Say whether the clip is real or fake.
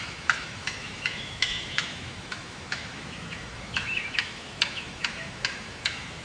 fake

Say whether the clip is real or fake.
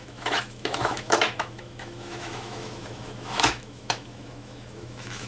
fake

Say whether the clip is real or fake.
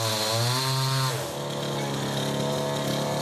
real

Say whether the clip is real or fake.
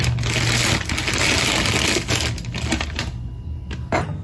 real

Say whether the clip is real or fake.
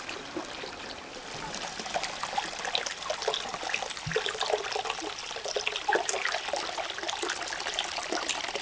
real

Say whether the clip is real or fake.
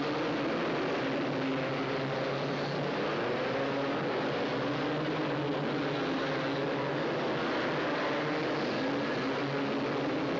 real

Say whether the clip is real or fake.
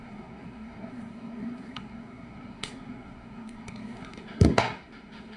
fake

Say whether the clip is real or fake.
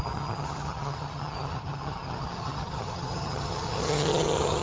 fake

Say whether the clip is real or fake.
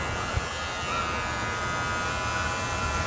real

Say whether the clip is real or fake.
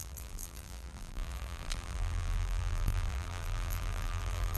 fake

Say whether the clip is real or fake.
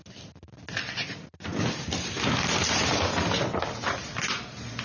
real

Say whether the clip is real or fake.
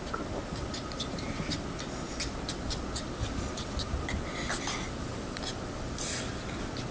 real